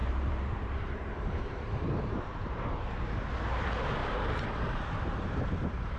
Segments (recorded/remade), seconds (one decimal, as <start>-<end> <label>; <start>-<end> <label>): 0.0-3.3 remade; 3.3-4.0 recorded; 4.0-6.0 remade

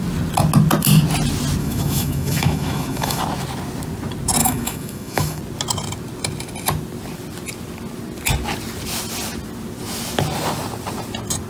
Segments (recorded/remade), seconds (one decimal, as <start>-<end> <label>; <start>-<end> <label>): 0.0-1.6 recorded; 1.6-3.2 remade; 3.2-4.4 recorded; 4.4-5.4 remade; 5.4-11.5 recorded

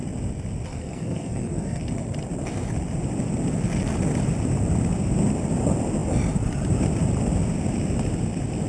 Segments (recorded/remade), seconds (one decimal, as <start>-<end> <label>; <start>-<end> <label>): 0.0-0.7 recorded; 0.7-1.8 remade; 1.8-8.7 recorded